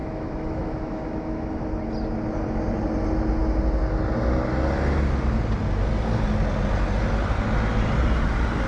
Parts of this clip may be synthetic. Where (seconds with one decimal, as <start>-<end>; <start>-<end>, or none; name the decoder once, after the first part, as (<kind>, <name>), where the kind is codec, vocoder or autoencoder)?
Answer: 0.0-1.7 (autoencoder, DAC-VAE)

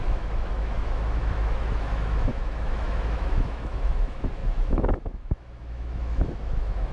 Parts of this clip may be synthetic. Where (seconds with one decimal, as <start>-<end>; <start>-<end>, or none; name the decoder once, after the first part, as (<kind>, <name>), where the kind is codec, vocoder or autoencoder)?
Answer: 0.0-6.9 (autoencoder, DAC-VAE)

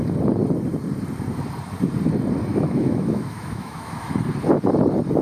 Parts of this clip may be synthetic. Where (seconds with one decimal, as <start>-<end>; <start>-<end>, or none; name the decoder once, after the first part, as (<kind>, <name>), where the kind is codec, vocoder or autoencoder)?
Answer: 2.5-4.1 (autoencoder, DAC-VAE)

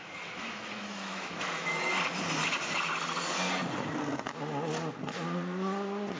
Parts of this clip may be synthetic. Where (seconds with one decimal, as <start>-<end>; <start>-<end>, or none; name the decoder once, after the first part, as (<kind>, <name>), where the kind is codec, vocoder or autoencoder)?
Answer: 0.0-1.9 (autoencoder, DAC-VAE)

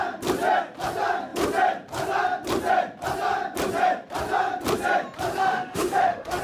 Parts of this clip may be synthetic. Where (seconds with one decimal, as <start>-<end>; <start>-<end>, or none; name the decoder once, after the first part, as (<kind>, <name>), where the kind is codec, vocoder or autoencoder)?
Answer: 5.4-6.4 (autoencoder, DAC-VAE)

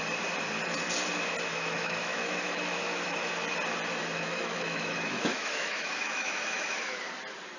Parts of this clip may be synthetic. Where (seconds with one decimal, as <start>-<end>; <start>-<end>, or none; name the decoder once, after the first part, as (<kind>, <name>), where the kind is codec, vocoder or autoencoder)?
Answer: 1.5-3.3 (autoencoder, DAC-VAE); 4.0-7.1

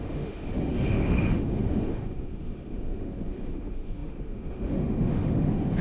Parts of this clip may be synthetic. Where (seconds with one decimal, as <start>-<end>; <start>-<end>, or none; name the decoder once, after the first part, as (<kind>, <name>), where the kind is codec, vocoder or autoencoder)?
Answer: 0.0-5.8 (autoencoder, DAC-VAE)